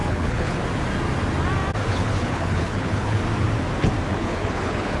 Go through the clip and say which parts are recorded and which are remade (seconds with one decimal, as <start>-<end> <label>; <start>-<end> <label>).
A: 0.0-0.6 remade; 0.6-1.9 recorded; 1.9-3.2 remade; 3.2-4.1 recorded; 4.1-5.0 remade